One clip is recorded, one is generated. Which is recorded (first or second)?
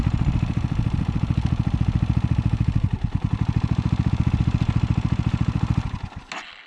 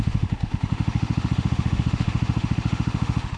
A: first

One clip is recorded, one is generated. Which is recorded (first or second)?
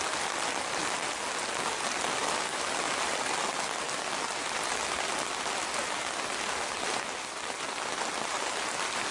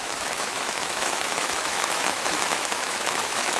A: first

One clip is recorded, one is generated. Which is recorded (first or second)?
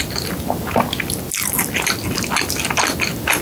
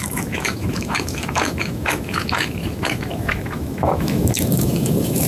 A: first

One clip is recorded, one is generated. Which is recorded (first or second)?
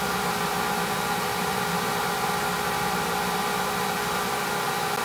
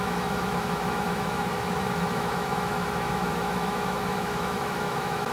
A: first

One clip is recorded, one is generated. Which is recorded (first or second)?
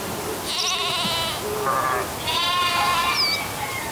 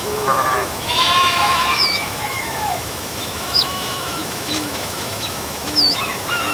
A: first